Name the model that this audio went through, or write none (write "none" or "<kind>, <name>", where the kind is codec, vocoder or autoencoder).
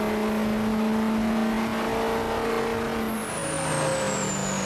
none